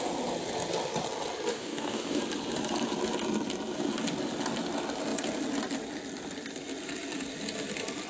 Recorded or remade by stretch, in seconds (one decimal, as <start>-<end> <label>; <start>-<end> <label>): 0.0-1.5 recorded; 1.5-2.2 remade; 2.2-8.1 recorded